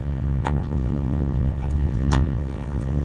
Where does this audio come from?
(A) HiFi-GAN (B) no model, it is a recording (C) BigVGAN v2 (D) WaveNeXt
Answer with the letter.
D